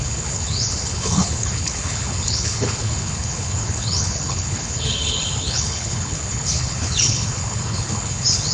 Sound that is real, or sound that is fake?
fake